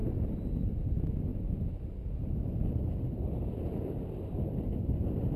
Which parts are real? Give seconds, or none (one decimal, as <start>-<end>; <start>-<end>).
0.0-5.4

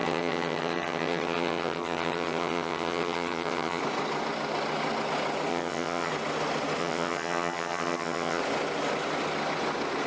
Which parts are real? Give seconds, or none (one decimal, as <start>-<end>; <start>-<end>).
3.8-5.5; 6.1-6.8; 8.4-10.1